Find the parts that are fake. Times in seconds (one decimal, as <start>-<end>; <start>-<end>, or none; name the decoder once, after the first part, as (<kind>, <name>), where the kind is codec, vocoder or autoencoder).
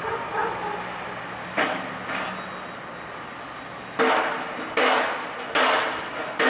none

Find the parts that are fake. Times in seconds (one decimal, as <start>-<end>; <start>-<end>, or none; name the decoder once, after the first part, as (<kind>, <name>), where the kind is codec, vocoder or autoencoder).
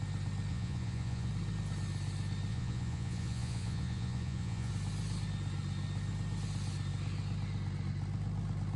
0.5-1.3 (vocoder, Vocos); 2.5-4.7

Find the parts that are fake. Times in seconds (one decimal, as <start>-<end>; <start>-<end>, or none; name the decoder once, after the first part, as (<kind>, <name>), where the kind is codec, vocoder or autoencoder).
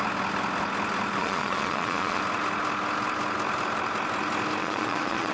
1.2-2.2 (vocoder, Vocos); 4.6-5.3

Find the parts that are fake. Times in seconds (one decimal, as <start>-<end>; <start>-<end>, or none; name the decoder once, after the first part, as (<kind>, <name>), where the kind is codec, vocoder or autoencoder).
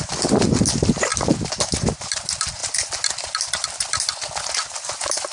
none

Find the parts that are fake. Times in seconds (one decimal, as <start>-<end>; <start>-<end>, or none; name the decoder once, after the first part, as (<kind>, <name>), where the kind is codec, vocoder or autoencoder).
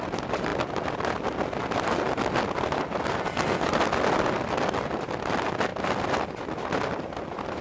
none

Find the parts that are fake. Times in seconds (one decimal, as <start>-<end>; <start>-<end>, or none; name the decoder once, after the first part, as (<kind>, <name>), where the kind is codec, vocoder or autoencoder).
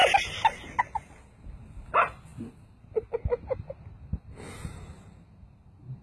none